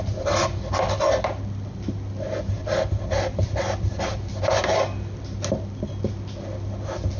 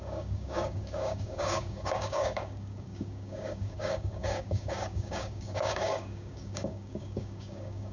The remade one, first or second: second